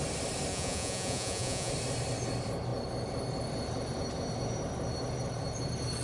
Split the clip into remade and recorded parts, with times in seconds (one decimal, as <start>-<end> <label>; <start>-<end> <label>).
0.0-0.5 recorded; 0.5-1.7 remade; 1.7-6.0 recorded